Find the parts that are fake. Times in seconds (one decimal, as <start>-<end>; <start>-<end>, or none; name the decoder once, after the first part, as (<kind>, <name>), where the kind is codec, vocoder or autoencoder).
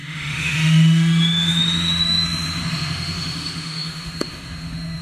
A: 0.0-5.0 (autoencoder, DAC-VAE)